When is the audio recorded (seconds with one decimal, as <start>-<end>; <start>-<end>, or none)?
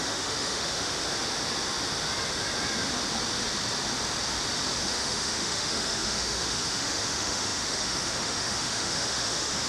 1.0-4.8